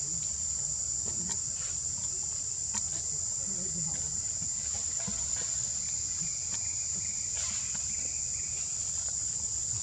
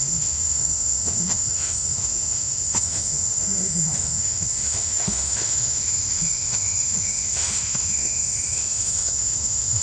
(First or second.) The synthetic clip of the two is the second